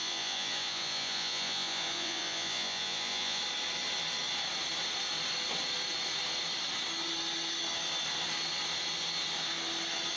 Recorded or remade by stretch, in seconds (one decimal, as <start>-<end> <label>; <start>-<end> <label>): 0.0-3.4 remade; 3.4-10.2 recorded